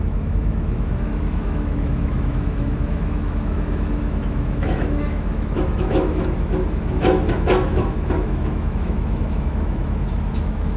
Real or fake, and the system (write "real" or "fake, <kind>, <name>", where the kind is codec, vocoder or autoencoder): fake, autoencoder, DAC-VAE